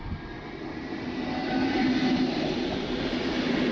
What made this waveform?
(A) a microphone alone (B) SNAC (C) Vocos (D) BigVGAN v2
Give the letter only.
A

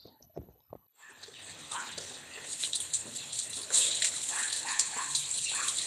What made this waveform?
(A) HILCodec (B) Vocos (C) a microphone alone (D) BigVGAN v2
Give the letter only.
A